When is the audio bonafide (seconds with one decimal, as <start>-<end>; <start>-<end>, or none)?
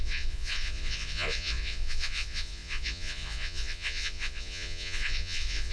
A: none